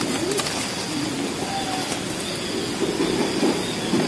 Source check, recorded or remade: recorded